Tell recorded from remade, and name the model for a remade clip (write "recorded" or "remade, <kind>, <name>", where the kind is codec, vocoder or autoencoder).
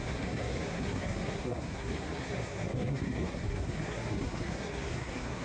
remade, codec, SNAC